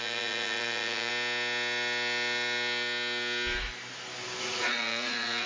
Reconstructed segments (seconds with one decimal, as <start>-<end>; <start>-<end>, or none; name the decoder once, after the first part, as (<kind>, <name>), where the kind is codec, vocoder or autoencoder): 0.0-1.1 (vocoder, Vocos); 4.4-5.5